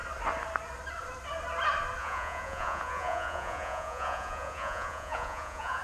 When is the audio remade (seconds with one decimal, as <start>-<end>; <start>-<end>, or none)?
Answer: 2.0-5.8